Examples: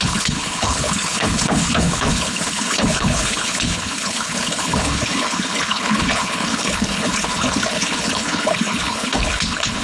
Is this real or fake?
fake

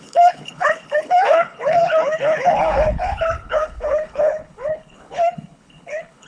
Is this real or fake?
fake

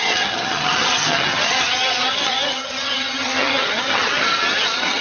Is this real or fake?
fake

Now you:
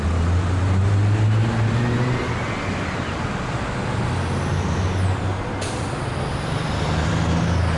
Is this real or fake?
real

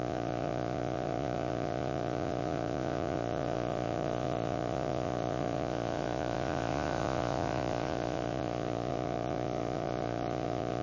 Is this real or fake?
fake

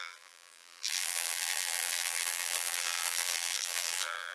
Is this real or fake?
fake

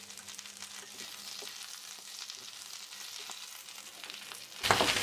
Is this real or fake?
real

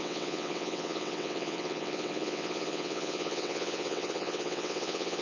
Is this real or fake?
fake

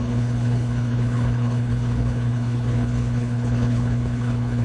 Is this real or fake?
fake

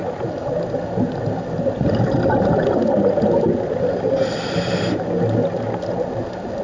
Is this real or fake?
real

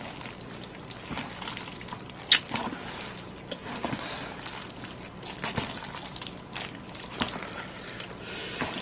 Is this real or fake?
real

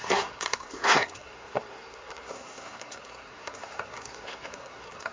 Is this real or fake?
fake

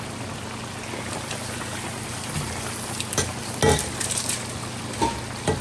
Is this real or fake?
real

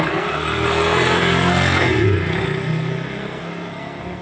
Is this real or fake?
fake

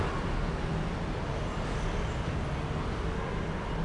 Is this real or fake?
real